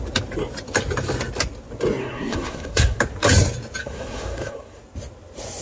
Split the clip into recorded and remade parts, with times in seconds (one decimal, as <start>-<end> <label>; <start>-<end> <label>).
0.0-2.0 recorded; 2.0-3.0 remade; 3.0-3.8 recorded; 3.8-4.8 remade; 4.8-5.6 recorded